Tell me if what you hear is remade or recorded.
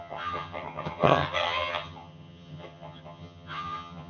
remade